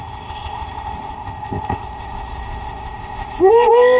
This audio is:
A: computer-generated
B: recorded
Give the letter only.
A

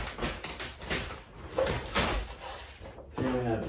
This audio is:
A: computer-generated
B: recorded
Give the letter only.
B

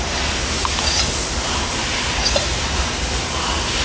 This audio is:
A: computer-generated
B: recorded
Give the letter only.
B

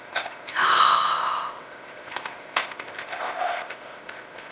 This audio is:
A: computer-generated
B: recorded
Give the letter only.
A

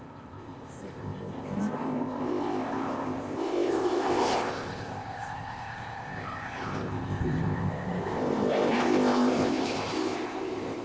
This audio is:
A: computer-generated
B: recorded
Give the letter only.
A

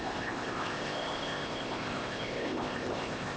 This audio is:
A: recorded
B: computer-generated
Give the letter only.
B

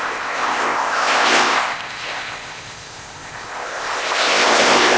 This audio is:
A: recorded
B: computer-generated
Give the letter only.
B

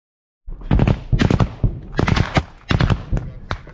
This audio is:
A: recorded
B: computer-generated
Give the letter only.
A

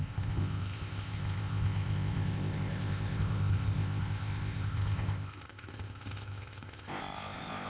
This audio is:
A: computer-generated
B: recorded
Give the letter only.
A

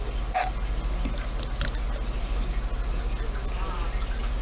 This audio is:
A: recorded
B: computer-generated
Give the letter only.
A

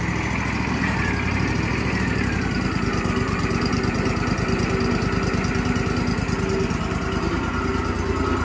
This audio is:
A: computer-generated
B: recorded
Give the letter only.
B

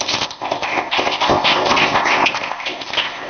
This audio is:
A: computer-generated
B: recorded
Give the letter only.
A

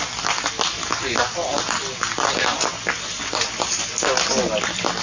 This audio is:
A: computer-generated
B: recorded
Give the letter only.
B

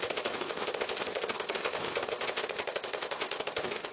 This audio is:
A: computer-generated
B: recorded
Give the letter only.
A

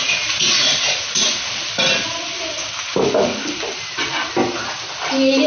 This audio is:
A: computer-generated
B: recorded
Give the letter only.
B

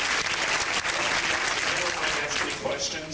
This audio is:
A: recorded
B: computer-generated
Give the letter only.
A